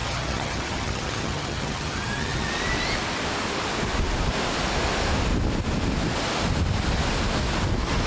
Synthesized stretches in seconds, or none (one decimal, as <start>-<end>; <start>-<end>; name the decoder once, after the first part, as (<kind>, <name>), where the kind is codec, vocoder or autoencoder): 0.0-2.5 (vocoder, HiFi-GAN)

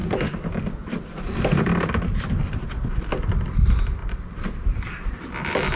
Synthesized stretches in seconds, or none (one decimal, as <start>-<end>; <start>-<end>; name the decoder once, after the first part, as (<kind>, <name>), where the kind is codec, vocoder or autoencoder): 0.0-3.0 (vocoder, BigVGAN v2); 4.0-5.3

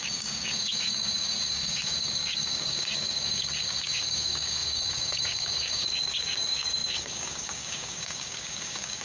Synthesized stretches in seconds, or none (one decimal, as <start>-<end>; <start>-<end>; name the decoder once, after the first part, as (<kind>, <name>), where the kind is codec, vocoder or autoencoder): 0.0-9.0 (codec, DAC)

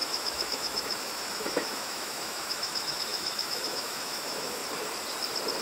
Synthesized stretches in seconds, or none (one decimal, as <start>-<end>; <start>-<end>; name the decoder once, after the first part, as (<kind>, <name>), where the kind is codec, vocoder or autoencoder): 0.0-4.6 (autoencoder, DAC-VAE)

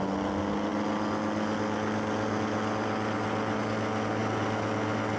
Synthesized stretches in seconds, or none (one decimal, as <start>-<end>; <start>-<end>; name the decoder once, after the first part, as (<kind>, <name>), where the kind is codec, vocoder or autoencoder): none

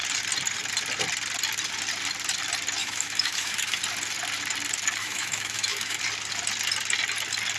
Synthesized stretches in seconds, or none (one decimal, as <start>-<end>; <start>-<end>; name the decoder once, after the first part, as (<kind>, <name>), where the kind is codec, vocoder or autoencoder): 2.8-3.8 (autoencoder, DAC-VAE); 5.0-6.0

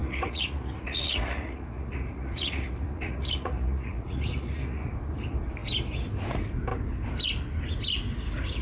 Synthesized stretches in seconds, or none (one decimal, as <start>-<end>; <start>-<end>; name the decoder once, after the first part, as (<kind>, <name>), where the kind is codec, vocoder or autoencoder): 0.0-4.9 (vocoder, Vocos)